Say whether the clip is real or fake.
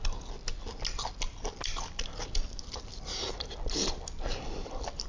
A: real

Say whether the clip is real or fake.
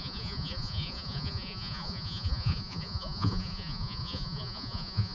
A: fake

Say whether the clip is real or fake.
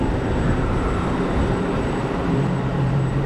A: fake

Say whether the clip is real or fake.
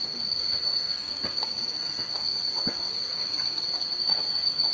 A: fake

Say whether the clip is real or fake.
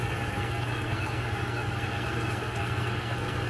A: fake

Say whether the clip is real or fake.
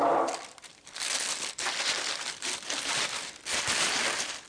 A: fake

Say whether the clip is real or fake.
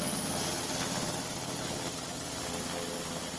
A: real